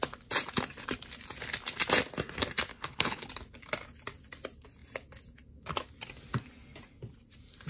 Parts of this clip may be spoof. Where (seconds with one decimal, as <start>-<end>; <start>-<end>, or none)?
2.7-3.3